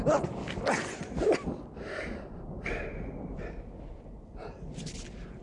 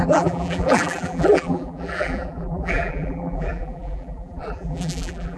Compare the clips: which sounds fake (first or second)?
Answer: second